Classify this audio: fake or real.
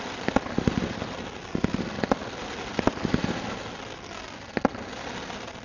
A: real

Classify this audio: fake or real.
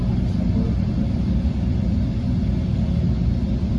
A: real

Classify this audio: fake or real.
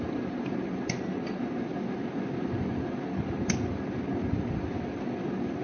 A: real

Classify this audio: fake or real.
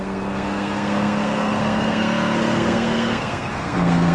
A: fake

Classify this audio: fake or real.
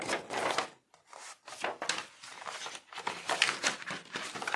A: real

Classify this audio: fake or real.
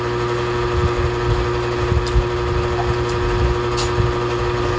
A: real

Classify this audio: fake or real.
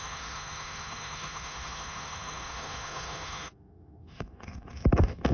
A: fake